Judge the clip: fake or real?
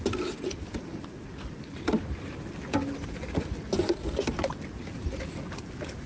real